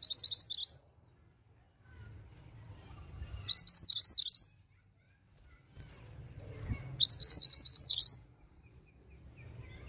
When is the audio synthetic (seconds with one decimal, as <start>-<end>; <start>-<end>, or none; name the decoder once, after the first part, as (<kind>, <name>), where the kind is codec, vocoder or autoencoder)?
7.2-8.9 (vocoder, Vocos)